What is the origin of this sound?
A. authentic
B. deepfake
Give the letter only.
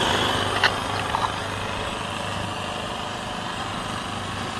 A